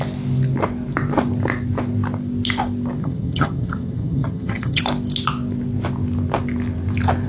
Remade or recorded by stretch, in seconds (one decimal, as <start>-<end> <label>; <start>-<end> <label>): 0.0-3.0 recorded; 3.0-4.8 remade; 4.8-7.3 recorded